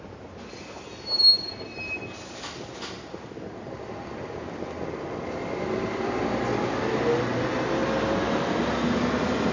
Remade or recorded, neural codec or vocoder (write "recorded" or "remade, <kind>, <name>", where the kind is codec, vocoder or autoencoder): recorded